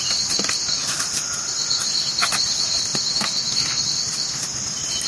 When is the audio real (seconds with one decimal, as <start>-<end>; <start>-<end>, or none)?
0.0-5.1

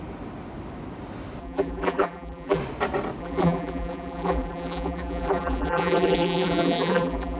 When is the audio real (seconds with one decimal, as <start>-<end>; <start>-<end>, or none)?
0.0-1.4; 2.6-3.2

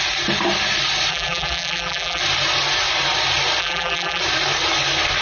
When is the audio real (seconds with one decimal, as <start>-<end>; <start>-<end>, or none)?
0.0-1.1; 2.2-3.6; 4.2-5.2

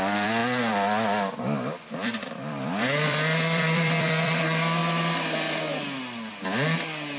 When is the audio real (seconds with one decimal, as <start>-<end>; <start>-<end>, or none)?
0.4-1.4; 4.8-6.3

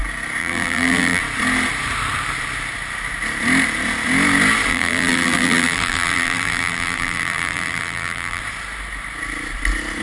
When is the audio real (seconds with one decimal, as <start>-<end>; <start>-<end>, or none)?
0.0-0.4; 1.2-4.7; 8.4-10.0